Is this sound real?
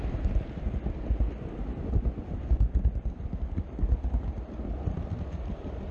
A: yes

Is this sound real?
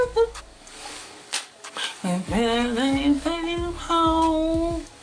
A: no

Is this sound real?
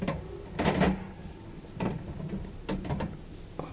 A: yes